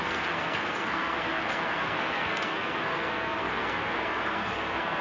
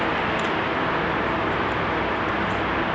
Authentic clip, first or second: second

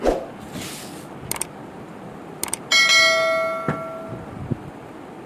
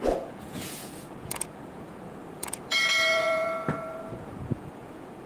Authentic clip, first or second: first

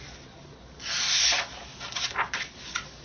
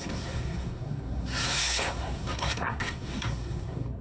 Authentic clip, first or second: first